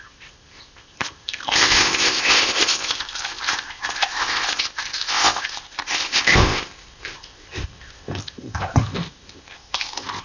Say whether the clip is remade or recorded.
remade